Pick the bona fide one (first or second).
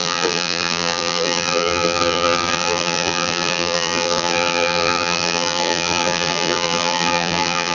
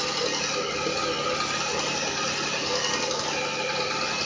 second